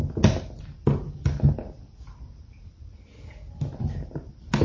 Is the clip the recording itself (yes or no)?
yes